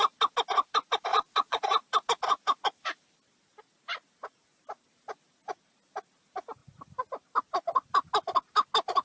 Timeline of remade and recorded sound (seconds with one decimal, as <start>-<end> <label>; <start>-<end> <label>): 0.0-1.1 recorded; 1.1-1.6 remade; 1.6-9.0 recorded